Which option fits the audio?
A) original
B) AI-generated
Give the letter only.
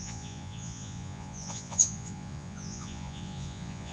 B